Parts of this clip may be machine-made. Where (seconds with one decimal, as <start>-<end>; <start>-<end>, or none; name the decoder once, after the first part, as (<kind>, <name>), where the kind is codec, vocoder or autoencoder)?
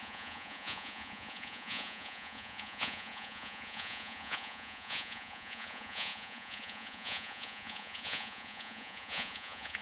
0.0-9.8 (vocoder, Vocos)